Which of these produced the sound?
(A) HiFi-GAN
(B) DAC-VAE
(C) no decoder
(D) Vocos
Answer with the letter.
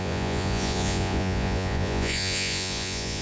D